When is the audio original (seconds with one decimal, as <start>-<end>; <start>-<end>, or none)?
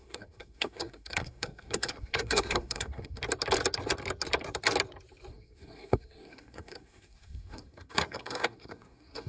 3.2-5.3